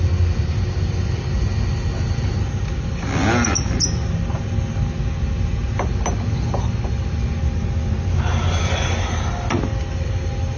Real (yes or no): yes